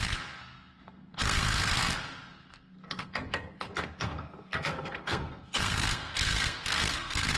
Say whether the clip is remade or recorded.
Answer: remade